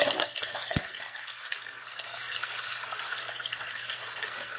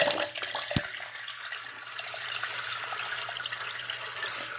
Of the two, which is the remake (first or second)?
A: first